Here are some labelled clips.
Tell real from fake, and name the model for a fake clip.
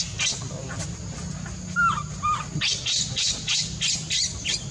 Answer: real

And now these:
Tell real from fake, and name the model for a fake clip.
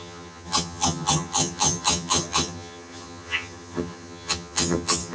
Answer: fake, vocoder, HiFi-GAN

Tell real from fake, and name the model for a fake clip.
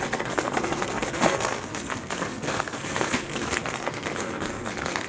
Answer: fake, codec, SNAC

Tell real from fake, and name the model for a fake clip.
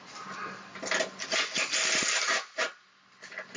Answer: real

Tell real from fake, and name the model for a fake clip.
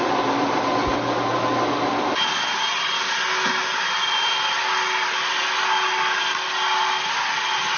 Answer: real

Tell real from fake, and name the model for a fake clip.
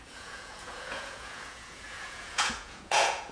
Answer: fake, vocoder, Vocos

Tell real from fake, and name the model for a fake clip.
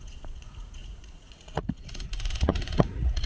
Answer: fake, vocoder, Vocos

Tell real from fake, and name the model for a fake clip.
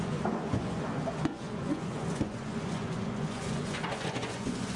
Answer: fake, vocoder, Vocos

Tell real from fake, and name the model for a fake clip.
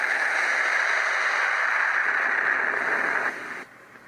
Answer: real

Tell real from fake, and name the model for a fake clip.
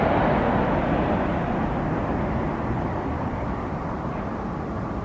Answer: real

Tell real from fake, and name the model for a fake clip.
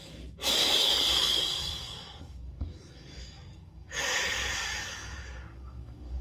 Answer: fake, codec, DAC